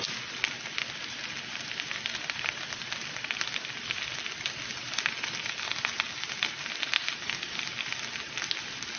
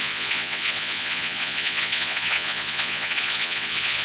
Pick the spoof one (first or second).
second